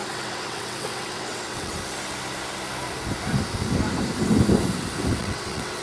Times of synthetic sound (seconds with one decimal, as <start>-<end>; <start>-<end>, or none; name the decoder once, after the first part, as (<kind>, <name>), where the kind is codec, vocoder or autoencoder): 0.0-1.7 (vocoder, WaveNeXt); 5.2-5.8